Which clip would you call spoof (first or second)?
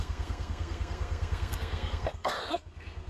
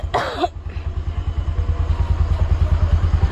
first